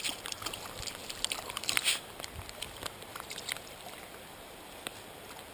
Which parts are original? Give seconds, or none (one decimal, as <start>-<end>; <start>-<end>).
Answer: 0.0-1.0; 2.6-3.1; 4.8-5.5